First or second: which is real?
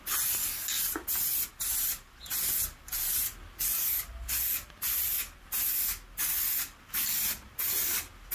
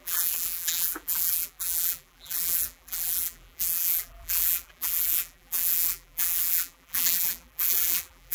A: first